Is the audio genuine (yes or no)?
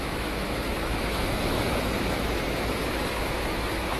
no